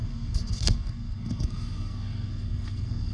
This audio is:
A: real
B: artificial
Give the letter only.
B